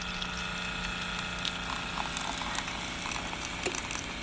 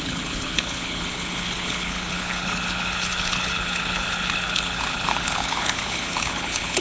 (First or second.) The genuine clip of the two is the first